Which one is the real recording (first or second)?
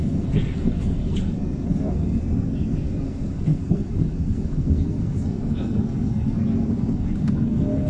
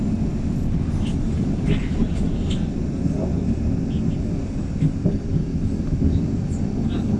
second